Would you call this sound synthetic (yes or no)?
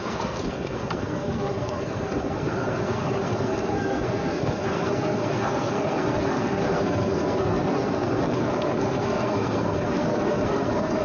yes